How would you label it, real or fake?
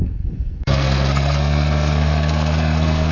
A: fake